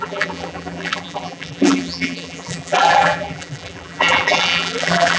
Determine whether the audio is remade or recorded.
remade